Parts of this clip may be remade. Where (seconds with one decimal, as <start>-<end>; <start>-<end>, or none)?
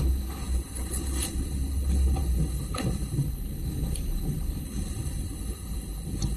0.0-6.4